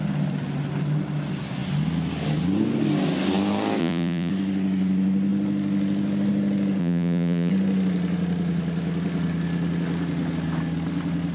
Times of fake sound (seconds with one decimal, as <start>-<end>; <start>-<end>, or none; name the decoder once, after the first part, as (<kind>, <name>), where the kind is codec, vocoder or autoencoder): 3.8-4.3 (vocoder, Vocos); 6.8-7.5